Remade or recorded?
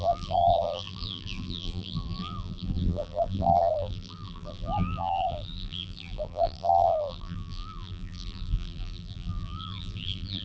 remade